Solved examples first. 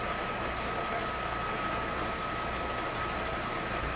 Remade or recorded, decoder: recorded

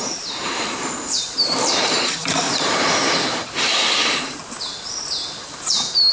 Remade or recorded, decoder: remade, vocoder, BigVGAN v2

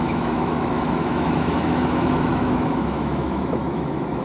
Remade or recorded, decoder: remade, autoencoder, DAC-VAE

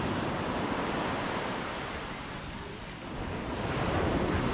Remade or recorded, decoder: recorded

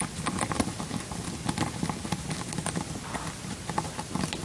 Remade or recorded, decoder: recorded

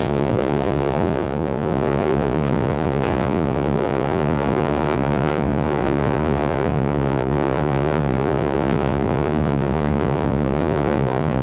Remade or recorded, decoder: remade, vocoder, Vocos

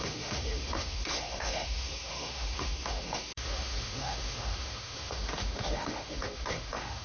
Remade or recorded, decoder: remade, autoencoder, DAC-VAE